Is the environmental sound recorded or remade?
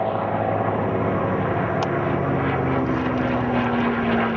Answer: recorded